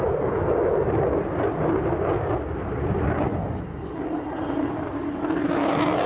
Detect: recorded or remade recorded